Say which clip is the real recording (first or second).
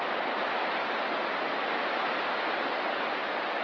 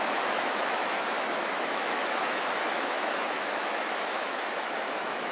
first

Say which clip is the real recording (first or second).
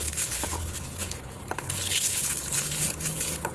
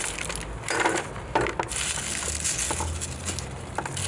second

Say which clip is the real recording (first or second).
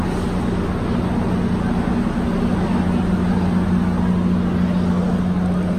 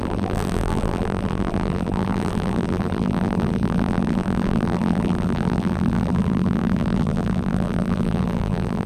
first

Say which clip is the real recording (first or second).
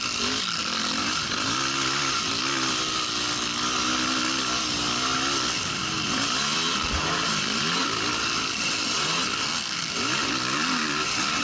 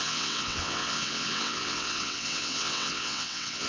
first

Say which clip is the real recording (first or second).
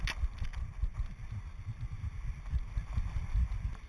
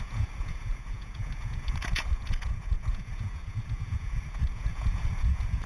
first